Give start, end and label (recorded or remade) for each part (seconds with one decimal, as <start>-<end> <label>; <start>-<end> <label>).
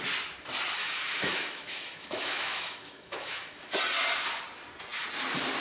0.0-0.8 recorded; 0.8-3.8 remade; 3.8-5.6 recorded